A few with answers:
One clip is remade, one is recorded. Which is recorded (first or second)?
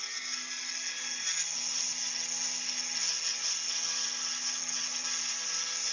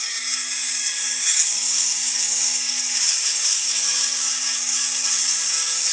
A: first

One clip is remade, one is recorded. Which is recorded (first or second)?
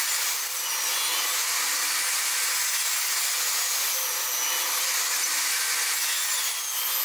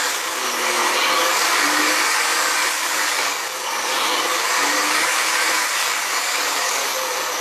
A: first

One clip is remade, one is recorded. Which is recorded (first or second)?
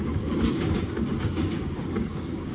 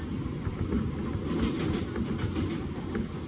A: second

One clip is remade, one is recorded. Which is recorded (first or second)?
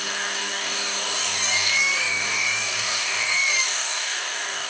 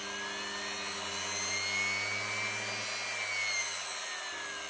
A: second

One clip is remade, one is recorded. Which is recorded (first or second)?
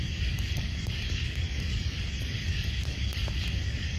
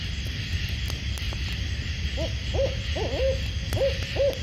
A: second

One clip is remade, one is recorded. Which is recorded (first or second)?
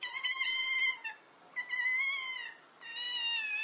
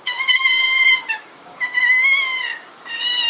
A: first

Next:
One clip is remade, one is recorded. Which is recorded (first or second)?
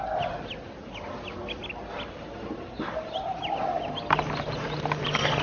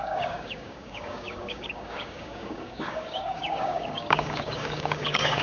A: first